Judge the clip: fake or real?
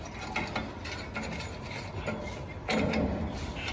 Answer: real